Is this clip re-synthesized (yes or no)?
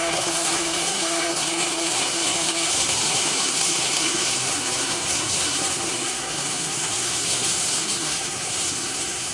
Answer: yes